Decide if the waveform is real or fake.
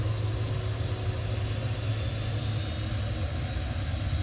real